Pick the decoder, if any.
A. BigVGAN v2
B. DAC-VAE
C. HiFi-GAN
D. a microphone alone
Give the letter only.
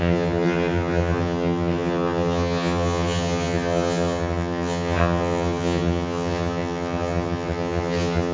C